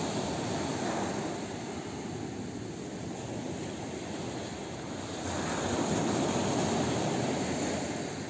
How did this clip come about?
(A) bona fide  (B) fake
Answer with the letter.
A